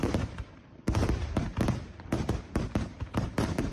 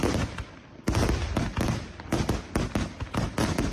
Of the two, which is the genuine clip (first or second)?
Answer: second